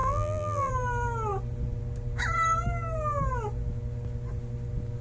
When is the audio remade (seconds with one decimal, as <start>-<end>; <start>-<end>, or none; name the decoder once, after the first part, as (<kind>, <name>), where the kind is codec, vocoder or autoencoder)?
0.0-0.7 (vocoder, BigVGAN v2)